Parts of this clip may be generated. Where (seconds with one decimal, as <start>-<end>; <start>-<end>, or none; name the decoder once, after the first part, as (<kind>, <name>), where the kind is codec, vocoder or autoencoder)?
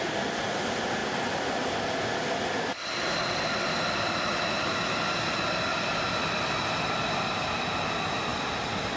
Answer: 5.7-7.8 (vocoder, BigVGAN v2); 8.3-9.0